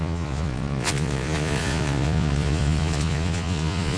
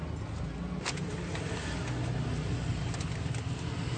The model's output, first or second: first